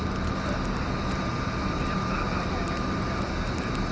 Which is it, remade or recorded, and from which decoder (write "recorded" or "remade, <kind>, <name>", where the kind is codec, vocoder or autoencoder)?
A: recorded